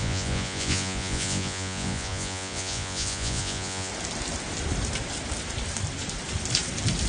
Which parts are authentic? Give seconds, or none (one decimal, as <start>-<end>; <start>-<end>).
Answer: 3.9-7.1